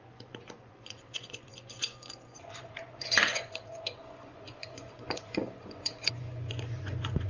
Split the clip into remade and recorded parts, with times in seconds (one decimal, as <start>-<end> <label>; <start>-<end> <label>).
0.0-7.3 remade

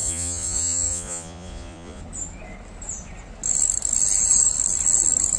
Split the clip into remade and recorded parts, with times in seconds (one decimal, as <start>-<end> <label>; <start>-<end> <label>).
0.0-2.0 remade; 2.0-5.4 recorded

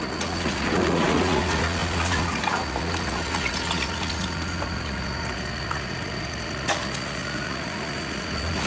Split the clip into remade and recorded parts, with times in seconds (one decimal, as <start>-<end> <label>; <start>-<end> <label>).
0.0-8.7 remade

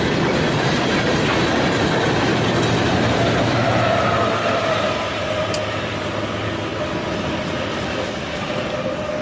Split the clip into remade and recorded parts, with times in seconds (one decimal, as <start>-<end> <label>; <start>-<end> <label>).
0.0-9.2 recorded

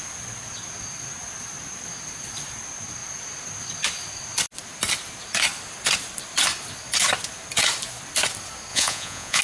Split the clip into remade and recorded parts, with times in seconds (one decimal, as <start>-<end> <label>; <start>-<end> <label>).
0.0-8.7 recorded; 8.7-9.4 remade

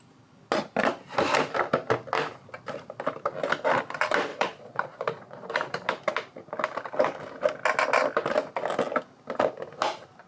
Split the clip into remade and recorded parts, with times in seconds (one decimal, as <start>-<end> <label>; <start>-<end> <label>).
0.0-4.3 recorded; 4.3-5.4 remade; 5.4-10.3 recorded

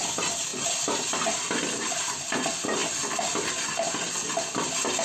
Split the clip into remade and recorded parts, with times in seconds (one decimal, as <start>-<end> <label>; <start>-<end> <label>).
0.0-5.0 recorded

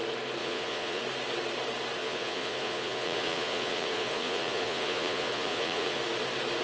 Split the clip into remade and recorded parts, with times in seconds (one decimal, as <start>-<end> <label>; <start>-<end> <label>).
0.0-0.4 recorded; 0.4-1.0 remade; 1.0-2.0 recorded; 2.0-6.0 remade; 6.0-6.6 recorded